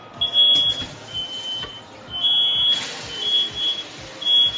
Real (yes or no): yes